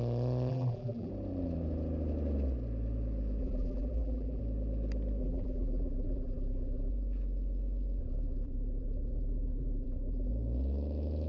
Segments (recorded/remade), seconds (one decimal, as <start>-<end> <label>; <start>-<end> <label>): 0.0-0.5 recorded; 0.5-1.1 remade; 1.1-3.4 recorded; 3.4-4.4 remade; 4.4-5.2 recorded; 5.2-6.9 remade; 6.9-8.0 recorded; 8.0-10.3 remade; 10.3-11.3 recorded